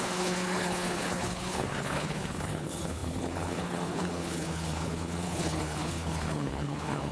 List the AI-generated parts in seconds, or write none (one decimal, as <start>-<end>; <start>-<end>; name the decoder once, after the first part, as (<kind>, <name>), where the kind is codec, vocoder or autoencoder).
0.0-7.1 (codec, HILCodec)